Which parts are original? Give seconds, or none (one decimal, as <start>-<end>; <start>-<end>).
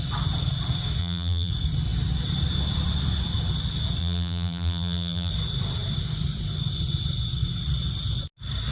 0.0-1.0; 1.5-4.0; 5.3-8.7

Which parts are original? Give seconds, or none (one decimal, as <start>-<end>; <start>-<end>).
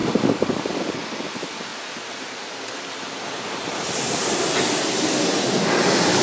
1.7-5.4